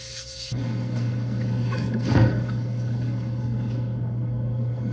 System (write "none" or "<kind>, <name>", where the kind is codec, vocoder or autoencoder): codec, SNAC